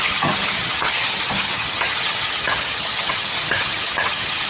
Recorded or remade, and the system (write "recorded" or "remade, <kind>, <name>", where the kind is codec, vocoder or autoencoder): remade, vocoder, HiFi-GAN